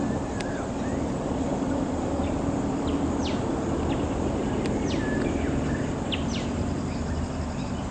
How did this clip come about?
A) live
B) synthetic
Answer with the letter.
A